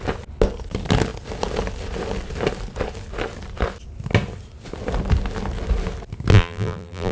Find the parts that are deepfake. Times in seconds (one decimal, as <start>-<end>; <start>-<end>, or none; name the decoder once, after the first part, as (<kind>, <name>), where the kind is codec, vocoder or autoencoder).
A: 6.3-7.1 (vocoder, BigVGAN v2)